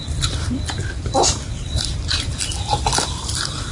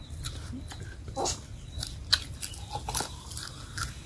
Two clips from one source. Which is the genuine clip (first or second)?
second